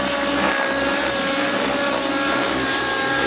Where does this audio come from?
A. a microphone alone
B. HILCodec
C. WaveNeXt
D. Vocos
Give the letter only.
A